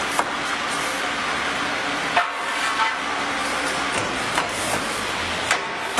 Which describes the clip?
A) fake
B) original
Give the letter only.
B